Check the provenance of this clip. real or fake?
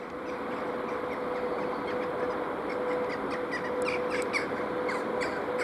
real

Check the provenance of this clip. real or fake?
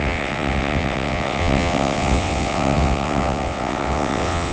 fake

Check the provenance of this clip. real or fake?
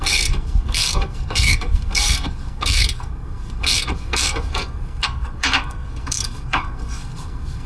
fake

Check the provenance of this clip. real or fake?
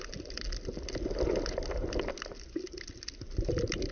real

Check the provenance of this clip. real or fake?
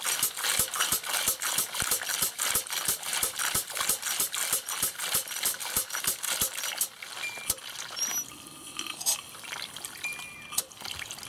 real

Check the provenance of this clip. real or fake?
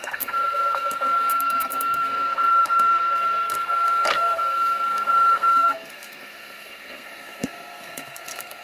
fake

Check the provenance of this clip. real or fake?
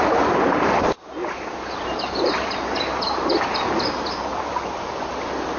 real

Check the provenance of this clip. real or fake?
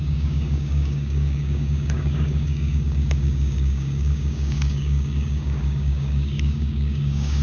fake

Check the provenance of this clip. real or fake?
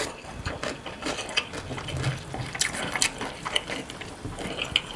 real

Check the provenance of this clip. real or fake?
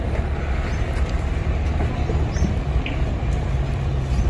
real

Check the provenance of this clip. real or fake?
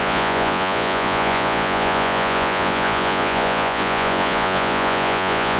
fake